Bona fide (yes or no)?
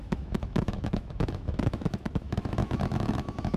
no